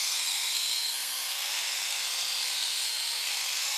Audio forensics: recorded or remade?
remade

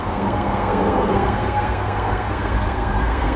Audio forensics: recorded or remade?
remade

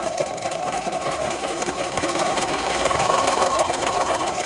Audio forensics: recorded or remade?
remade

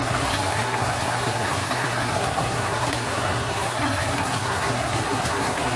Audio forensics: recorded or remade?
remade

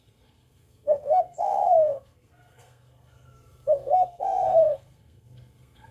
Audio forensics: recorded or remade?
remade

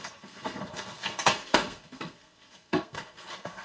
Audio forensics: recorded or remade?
remade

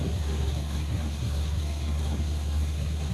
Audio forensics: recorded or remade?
remade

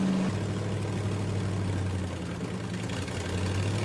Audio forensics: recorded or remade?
recorded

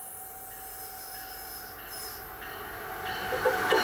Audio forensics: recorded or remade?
recorded